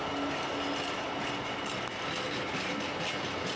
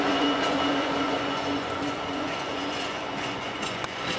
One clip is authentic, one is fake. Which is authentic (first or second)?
first